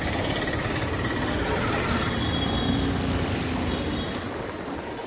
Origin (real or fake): real